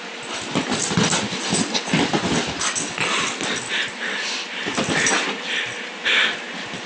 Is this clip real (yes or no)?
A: yes